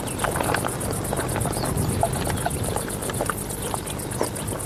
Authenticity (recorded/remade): recorded